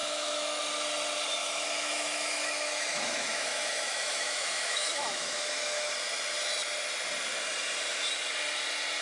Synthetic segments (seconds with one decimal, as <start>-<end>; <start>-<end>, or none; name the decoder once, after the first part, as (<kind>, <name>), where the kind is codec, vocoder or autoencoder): 0.0-0.6 (autoencoder, DAC-VAE); 1.4-5.9